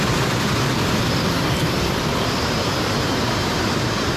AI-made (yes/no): yes